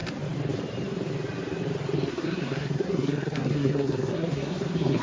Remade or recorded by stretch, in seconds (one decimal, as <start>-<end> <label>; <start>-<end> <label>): 0.0-2.1 recorded; 2.1-5.0 remade